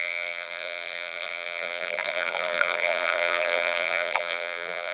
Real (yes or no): no